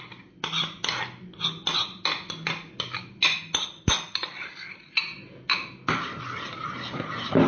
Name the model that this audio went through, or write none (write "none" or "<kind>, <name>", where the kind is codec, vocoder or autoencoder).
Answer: none